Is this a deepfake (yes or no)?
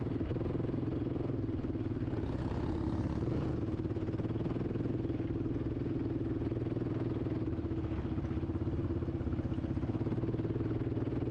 no